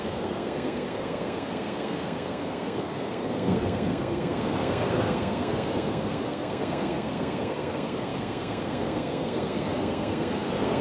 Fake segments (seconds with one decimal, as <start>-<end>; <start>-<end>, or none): 0.0-10.8